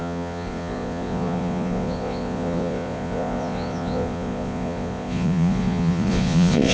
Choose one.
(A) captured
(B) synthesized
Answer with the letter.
B